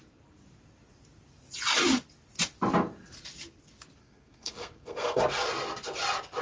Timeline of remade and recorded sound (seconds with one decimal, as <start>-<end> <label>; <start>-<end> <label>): 0.0-4.0 recorded; 4.0-5.2 remade; 5.2-6.4 recorded